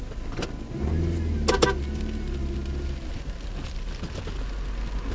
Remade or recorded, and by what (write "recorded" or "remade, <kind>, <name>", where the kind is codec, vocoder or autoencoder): recorded